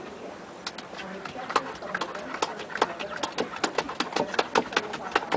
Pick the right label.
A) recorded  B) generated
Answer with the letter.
A